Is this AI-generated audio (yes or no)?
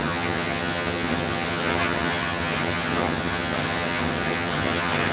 yes